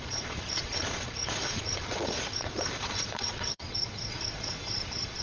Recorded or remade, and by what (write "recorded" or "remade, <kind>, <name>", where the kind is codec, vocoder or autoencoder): remade, vocoder, Vocos